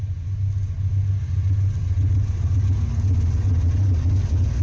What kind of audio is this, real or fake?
real